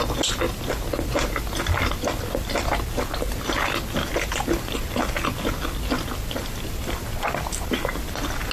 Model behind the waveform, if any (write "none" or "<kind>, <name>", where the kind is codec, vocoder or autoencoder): none